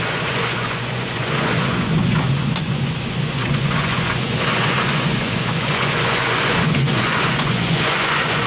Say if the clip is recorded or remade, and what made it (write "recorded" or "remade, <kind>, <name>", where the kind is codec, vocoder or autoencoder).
remade, vocoder, Vocos